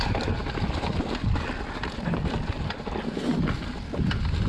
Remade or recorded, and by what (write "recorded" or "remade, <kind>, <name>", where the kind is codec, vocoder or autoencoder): recorded